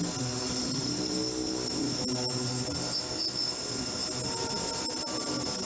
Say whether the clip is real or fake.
real